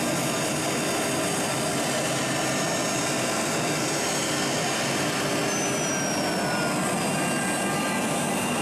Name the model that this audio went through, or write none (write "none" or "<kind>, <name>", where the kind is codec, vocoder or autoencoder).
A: none